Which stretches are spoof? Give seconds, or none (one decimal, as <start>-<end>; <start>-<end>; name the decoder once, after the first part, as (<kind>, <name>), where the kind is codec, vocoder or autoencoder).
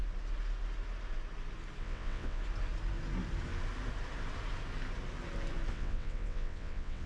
1.8-2.4 (vocoder, WaveNeXt); 5.7-7.1